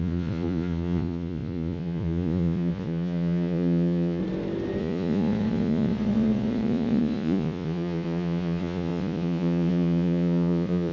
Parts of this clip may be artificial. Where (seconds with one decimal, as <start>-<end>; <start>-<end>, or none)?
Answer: 0.0-4.2; 4.8-10.9

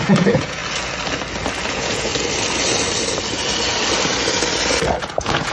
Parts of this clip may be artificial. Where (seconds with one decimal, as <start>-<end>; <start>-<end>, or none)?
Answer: 0.0-0.6; 1.7-2.1; 5.0-5.5

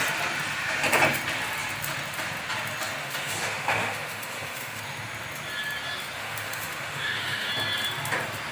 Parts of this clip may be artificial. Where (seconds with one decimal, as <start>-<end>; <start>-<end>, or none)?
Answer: 3.0-4.8; 6.2-7.5